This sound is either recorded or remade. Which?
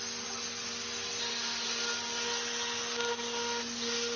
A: recorded